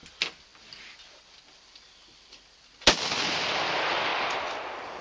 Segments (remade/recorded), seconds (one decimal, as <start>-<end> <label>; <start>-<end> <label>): 0.0-5.0 recorded